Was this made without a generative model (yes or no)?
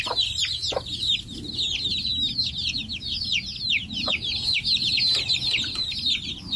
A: yes